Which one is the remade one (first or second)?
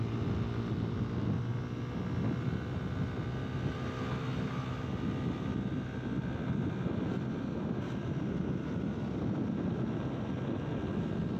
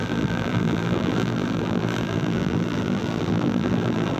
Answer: second